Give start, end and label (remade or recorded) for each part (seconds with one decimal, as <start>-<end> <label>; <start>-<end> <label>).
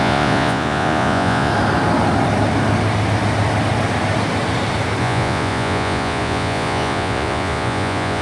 0.0-1.5 remade; 1.5-5.0 recorded; 5.0-8.2 remade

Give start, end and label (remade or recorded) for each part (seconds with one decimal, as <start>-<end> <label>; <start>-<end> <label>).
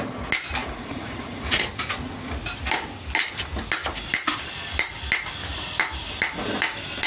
0.0-0.6 recorded; 0.6-1.6 remade; 1.6-7.1 recorded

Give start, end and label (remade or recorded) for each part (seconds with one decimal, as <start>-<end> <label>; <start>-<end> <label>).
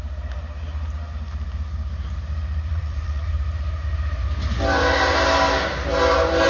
0.0-2.7 recorded; 2.7-3.3 remade; 3.3-6.5 recorded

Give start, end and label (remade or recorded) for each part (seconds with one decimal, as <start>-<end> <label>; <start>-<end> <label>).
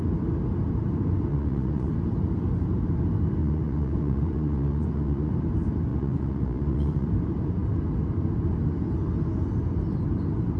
0.0-1.3 recorded; 1.3-1.9 remade; 1.9-3.4 recorded; 3.4-5.3 remade; 5.3-5.9 recorded; 5.9-7.1 remade; 7.1-10.6 recorded